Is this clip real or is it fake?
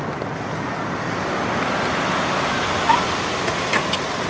real